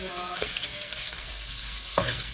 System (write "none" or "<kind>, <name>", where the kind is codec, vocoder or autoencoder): codec, SNAC